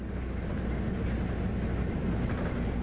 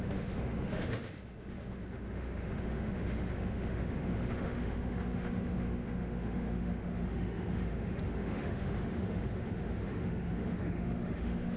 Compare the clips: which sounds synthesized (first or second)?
second